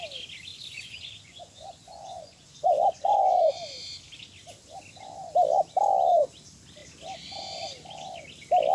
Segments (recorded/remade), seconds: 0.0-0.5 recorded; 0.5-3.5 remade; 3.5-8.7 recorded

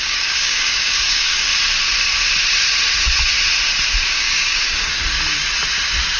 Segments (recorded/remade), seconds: 0.0-1.5 remade; 1.5-4.0 recorded; 4.0-5.0 remade; 5.0-6.2 recorded

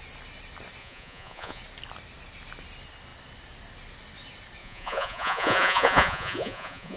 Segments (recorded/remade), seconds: 0.0-0.8 recorded; 0.8-1.6 remade; 1.6-4.6 recorded; 4.6-7.0 remade

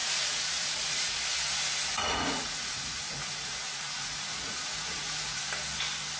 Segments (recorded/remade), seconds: 0.0-1.2 remade; 1.2-1.9 recorded; 1.9-5.4 remade; 5.4-6.2 recorded

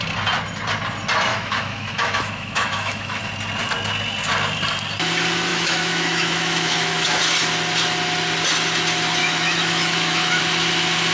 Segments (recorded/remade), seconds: 0.0-1.3 recorded; 1.3-3.2 remade; 3.2-5.5 recorded; 5.5-7.2 remade; 7.2-9.2 recorded; 9.2-10.4 remade; 10.4-11.1 recorded

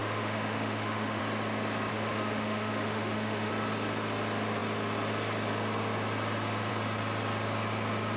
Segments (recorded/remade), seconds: 0.0-1.2 remade; 1.2-1.9 recorded; 1.9-3.5 remade; 3.5-8.2 recorded